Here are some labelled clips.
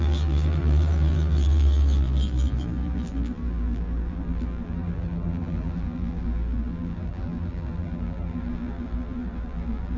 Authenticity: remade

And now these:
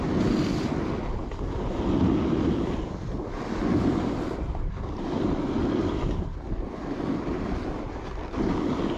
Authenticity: recorded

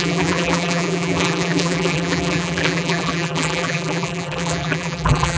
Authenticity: remade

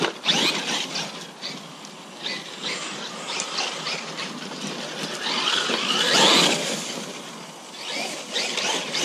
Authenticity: recorded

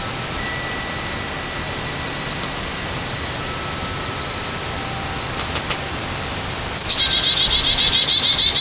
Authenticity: recorded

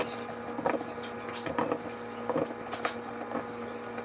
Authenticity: recorded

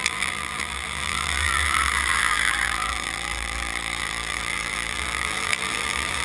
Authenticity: remade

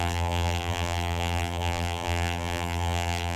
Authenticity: remade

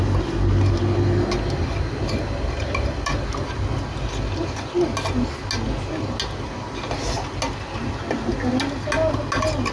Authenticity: recorded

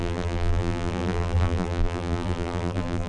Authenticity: remade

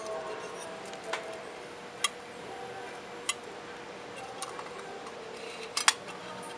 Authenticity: recorded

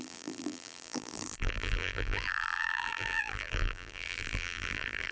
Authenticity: remade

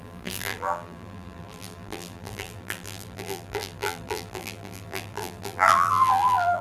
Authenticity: remade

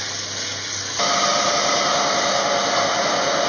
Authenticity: recorded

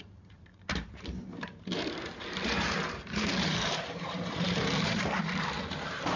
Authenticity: remade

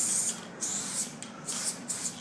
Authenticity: recorded